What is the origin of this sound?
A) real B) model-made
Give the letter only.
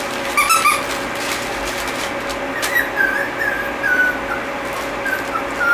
A